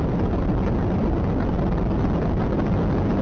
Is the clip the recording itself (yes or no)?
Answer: yes